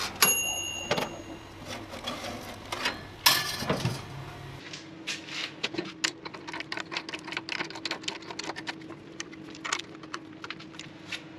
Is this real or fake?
real